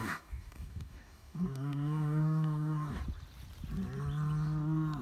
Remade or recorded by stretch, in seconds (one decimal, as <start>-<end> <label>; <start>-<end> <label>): 0.0-3.0 remade; 3.0-5.0 recorded